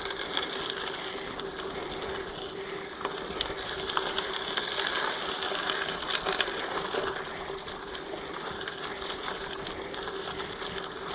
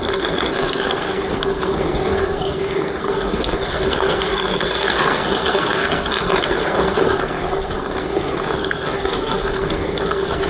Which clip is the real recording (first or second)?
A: first